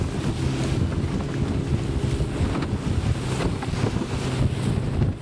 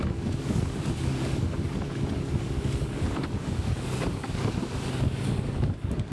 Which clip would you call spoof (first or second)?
second